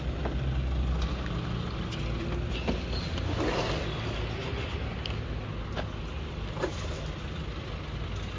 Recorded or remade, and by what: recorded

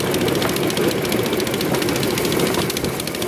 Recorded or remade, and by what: recorded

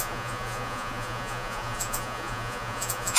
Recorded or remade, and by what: remade, vocoder, Vocos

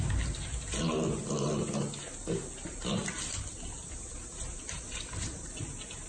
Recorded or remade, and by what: recorded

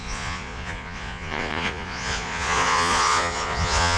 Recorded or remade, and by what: remade, vocoder, Vocos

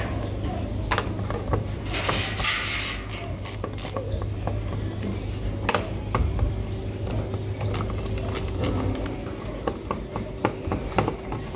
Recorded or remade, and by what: recorded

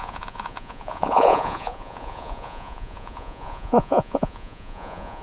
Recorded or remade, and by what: remade, vocoder, Vocos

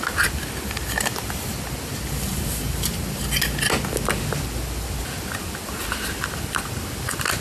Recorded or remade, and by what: recorded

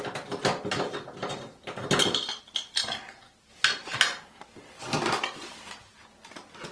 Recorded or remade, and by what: recorded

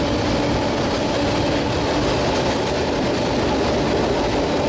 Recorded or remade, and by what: recorded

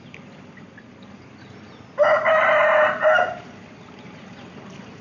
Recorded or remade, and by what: recorded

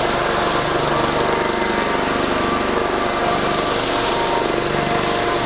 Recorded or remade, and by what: recorded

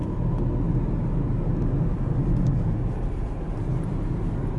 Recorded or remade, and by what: recorded